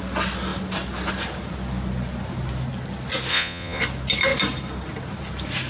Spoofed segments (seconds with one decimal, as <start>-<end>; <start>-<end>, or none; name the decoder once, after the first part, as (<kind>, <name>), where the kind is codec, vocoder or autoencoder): 3.3-3.8 (vocoder, Vocos)